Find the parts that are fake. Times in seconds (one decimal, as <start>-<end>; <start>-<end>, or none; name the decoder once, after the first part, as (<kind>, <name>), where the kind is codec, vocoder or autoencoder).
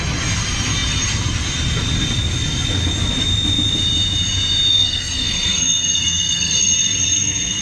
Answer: 4.7-7.6 (codec, SNAC)